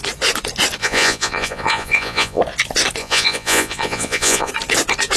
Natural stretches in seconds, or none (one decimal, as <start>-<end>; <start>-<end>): 0.0-0.8; 2.4-3.0; 4.5-5.2